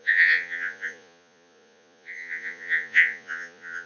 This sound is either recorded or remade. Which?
remade